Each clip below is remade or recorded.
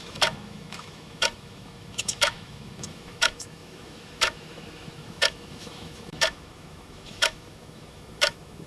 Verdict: remade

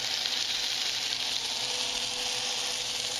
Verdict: recorded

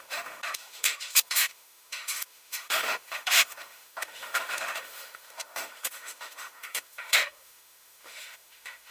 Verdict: remade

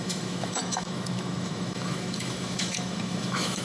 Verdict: remade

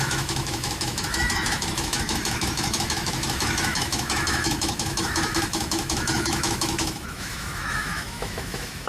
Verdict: remade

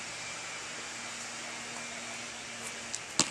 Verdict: recorded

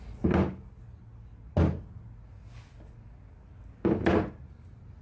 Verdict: recorded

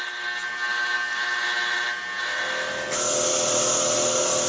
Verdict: recorded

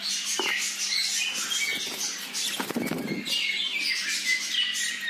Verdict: recorded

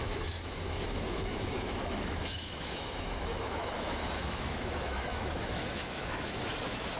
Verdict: remade